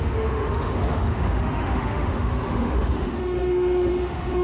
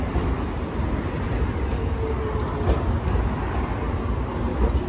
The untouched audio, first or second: second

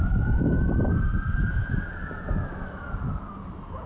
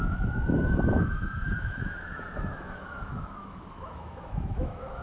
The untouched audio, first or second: first